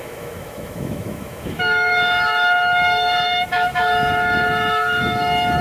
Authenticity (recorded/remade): remade